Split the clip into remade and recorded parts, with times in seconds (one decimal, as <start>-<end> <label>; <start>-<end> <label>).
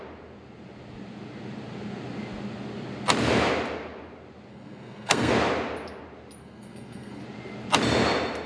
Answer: 0.0-4.5 recorded; 4.5-5.3 remade; 5.3-6.4 recorded; 6.4-7.2 remade; 7.2-8.5 recorded